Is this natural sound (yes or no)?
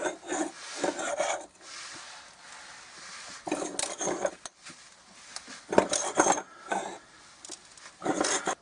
yes